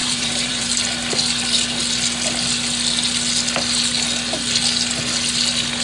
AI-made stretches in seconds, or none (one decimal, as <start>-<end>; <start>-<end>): 0.0-0.6